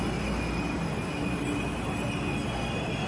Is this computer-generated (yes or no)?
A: no